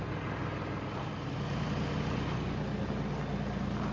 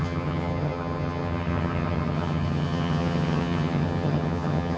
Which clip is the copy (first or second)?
second